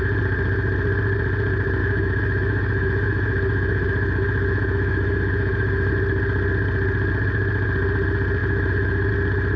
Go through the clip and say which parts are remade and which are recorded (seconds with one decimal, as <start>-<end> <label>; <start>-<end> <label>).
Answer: 0.0-1.8 recorded; 1.8-5.9 remade; 5.9-8.4 recorded; 8.4-9.1 remade; 9.1-9.6 recorded